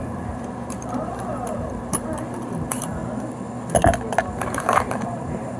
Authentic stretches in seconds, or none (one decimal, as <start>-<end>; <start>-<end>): 3.0-4.3